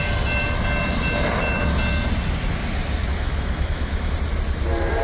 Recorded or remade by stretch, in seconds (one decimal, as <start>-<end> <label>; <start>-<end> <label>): 0.0-3.1 recorded; 3.1-4.1 remade; 4.1-5.0 recorded